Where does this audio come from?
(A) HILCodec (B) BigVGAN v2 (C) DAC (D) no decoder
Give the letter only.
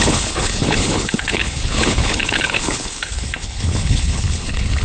A